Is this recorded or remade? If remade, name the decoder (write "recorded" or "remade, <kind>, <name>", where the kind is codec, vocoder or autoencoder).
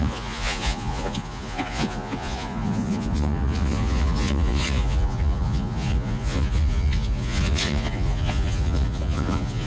remade, vocoder, Vocos